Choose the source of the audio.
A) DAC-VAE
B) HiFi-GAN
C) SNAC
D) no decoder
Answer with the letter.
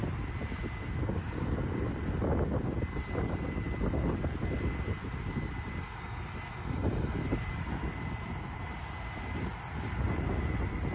D